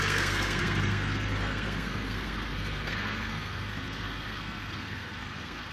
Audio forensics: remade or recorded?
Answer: remade